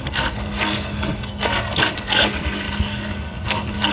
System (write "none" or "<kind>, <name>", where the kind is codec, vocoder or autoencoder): codec, SNAC